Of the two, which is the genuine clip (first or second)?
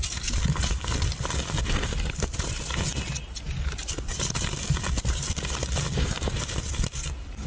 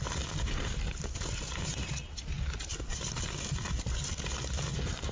first